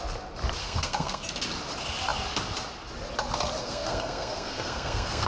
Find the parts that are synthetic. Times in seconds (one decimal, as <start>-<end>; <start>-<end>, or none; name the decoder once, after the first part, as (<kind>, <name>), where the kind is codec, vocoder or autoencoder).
0.6-1.4 (codec, SNAC); 3.6-5.3